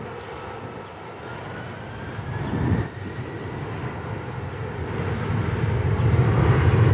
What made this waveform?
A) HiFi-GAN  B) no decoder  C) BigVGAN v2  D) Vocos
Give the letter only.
B